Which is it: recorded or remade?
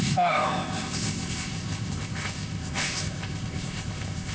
remade